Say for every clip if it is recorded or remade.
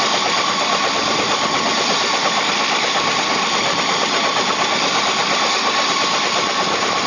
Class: remade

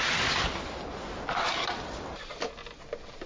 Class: recorded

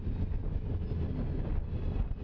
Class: recorded